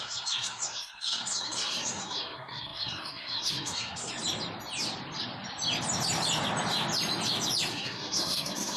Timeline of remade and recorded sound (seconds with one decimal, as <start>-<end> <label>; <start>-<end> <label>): 0.0-4.1 remade; 4.1-7.7 recorded; 7.7-8.8 remade